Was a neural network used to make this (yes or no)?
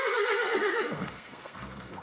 yes